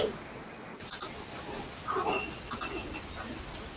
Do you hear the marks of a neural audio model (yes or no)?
no